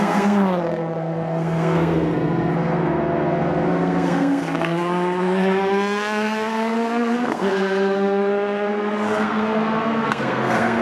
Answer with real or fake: fake